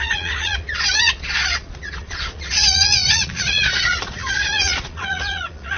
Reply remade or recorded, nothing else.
remade